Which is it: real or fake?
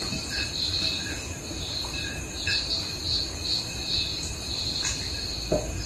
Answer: real